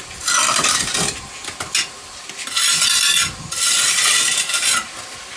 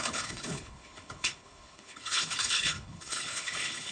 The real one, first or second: first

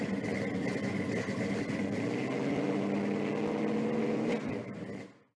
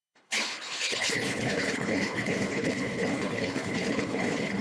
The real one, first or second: first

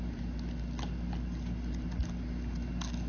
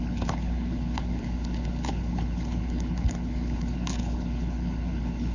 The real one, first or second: first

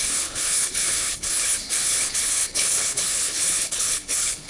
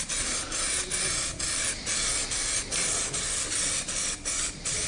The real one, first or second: second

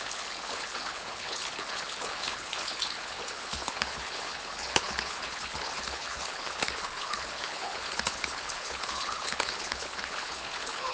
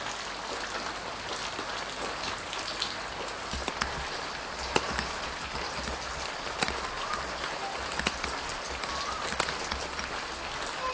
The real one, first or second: second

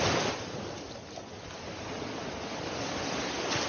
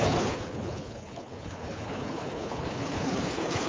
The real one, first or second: first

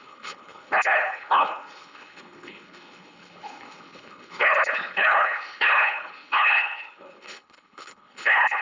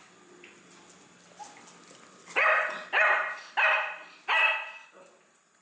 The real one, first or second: second